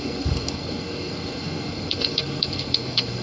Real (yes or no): no